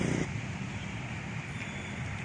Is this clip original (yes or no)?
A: yes